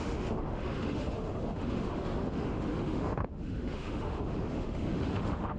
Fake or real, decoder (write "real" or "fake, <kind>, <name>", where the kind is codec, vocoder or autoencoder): fake, autoencoder, DAC-VAE